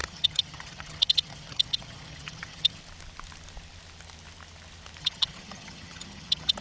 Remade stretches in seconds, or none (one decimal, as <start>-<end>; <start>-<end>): 0.0-2.8; 5.0-6.6

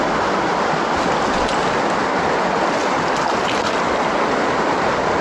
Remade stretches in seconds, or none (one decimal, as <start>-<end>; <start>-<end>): none

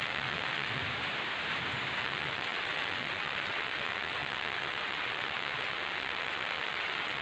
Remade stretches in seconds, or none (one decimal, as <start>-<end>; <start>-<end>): 0.0-0.8; 2.0-7.2

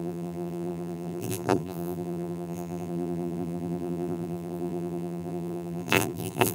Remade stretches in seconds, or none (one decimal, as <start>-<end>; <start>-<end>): 0.0-6.5

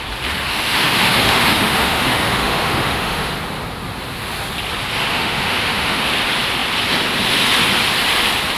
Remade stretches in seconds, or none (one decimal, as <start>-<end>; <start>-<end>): 0.5-3.3; 5.1-6.1

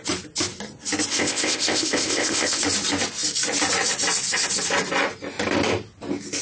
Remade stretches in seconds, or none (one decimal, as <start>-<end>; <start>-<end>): 1.1-2.6

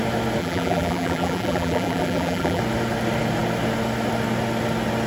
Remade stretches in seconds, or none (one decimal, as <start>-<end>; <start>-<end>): 0.4-2.6